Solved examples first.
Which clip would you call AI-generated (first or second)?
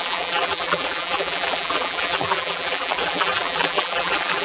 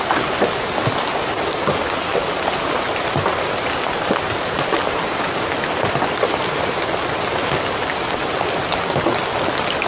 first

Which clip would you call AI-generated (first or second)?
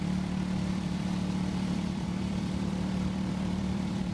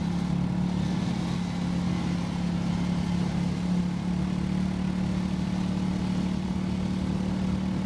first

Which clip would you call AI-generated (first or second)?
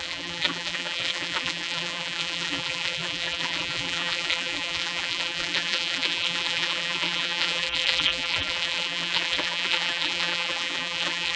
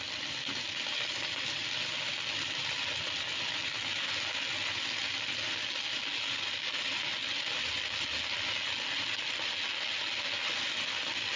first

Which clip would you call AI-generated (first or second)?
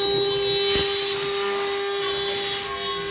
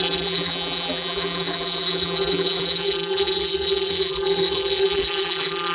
second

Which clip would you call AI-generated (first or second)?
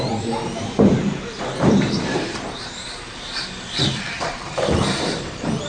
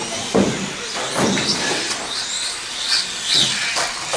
first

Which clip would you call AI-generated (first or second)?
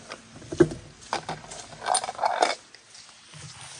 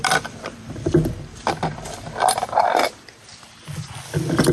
second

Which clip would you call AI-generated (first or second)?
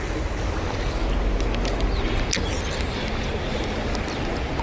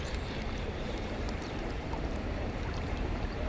second